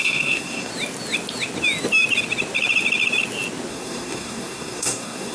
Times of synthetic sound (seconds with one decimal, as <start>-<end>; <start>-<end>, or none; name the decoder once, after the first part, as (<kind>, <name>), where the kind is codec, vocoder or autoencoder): 0.0-0.7 (codec, SNAC); 3.7-5.3